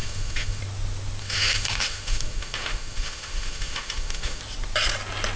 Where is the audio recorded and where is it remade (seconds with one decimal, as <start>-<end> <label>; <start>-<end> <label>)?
0.0-0.6 remade; 0.6-1.2 recorded; 1.2-4.4 remade; 4.4-5.4 recorded